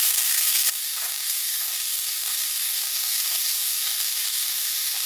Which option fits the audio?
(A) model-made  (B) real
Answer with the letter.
A